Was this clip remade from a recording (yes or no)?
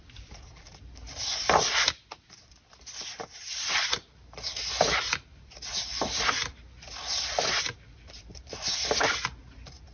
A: yes